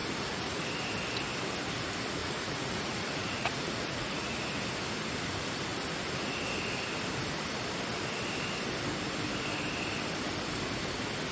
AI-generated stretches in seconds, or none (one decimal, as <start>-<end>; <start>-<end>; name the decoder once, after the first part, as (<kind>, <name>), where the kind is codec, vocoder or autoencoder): 0.0-0.7 (vocoder, Vocos); 2.2-4.4